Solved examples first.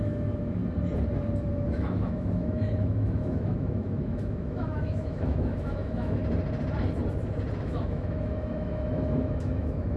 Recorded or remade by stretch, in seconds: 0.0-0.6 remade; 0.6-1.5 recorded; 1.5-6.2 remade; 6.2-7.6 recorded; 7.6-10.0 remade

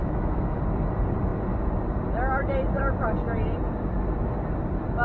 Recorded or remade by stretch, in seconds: 0.0-0.6 remade; 0.6-5.0 recorded

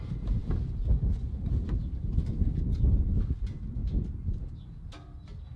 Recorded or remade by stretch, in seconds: 0.0-5.6 recorded

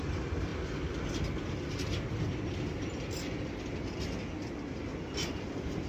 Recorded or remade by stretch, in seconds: 0.0-5.9 recorded

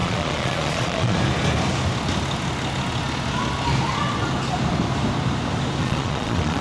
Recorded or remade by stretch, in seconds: 0.0-1.2 remade; 1.2-5.8 recorded; 5.8-6.6 remade

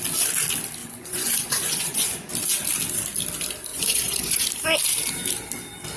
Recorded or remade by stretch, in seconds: 0.0-0.8 recorded; 0.8-2.3 remade; 2.3-3.7 recorded; 3.7-4.4 remade; 4.4-6.0 recorded

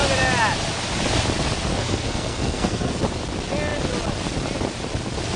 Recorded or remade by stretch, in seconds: 0.0-1.7 recorded; 1.7-3.0 remade; 3.0-5.4 recorded